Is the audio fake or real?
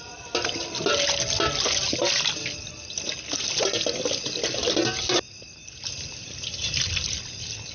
real